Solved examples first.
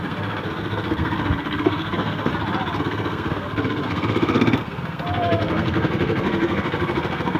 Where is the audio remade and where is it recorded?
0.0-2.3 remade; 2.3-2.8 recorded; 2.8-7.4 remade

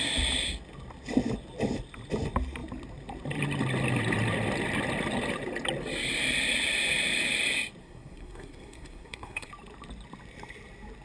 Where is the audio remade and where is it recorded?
0.0-7.8 recorded; 7.8-9.5 remade; 9.5-11.0 recorded

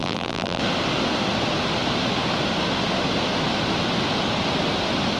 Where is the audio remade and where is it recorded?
0.0-0.6 remade; 0.6-5.2 recorded

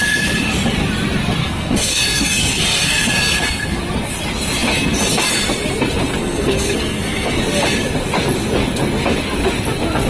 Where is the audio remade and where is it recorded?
0.0-1.4 recorded; 1.4-3.8 remade; 3.8-6.2 recorded; 6.2-7.4 remade; 7.4-10.1 recorded

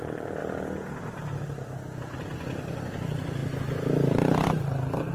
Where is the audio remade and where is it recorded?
0.0-0.4 remade; 0.4-2.2 recorded; 2.2-3.4 remade; 3.4-4.1 recorded; 4.1-5.1 remade